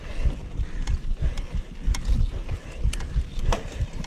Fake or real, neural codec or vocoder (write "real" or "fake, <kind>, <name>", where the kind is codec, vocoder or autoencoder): real